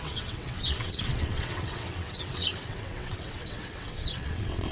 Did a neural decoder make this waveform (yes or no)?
yes